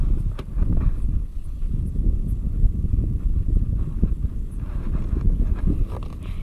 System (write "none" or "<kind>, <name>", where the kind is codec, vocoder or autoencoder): none